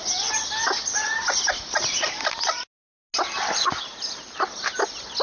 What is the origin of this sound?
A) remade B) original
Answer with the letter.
B